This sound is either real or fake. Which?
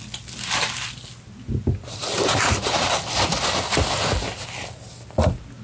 real